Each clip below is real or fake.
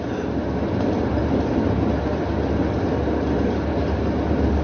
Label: real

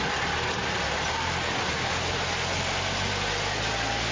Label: real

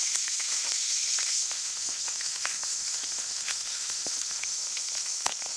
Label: fake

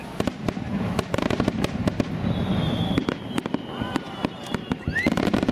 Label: real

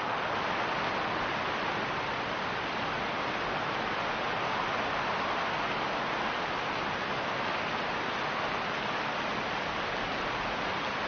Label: real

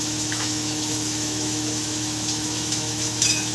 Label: fake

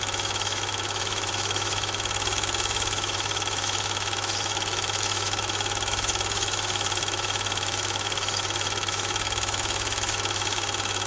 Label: fake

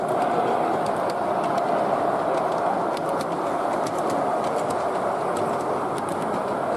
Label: real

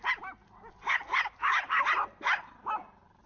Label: real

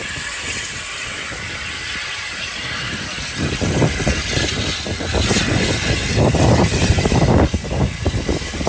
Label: real